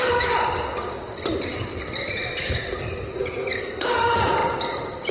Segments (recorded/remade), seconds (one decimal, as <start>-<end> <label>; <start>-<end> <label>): 0.0-5.1 recorded